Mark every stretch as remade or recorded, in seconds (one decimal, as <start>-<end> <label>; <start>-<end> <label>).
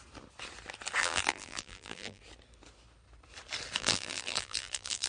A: 0.0-1.0 recorded; 1.0-2.2 remade; 2.2-3.8 recorded; 3.8-5.1 remade